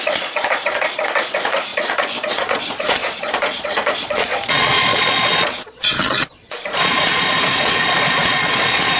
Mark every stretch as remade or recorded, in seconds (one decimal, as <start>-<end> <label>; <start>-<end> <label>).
0.0-9.0 remade